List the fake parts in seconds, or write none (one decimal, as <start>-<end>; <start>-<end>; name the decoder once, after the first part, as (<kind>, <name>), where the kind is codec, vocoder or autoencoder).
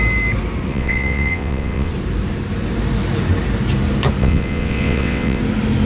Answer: 0.7-1.9 (vocoder, WaveNeXt); 4.2-5.4